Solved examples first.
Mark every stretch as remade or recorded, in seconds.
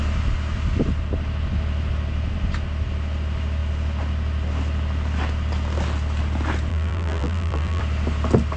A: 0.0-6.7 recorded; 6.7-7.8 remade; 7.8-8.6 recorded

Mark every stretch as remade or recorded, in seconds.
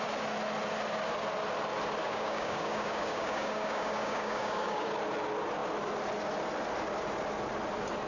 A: 0.0-2.0 recorded; 2.0-4.9 remade; 4.9-8.1 recorded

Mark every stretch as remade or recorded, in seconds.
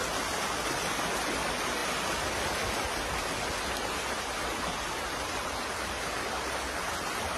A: 0.0-7.4 recorded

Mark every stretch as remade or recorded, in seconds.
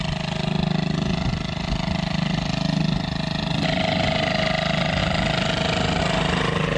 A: 0.0-6.8 recorded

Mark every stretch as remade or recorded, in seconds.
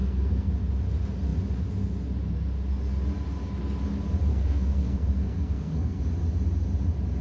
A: 0.0-0.5 remade; 0.5-4.3 recorded; 4.3-6.0 remade; 6.0-7.2 recorded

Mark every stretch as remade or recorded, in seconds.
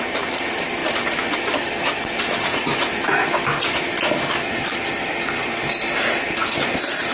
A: 0.0-0.8 remade; 0.8-2.2 recorded; 2.2-3.2 remade; 3.2-5.7 recorded; 5.7-7.1 remade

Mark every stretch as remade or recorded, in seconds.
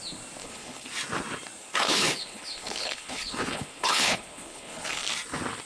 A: 0.0-0.4 recorded; 0.4-0.9 remade; 0.9-1.6 recorded; 1.6-5.0 remade; 5.0-5.7 recorded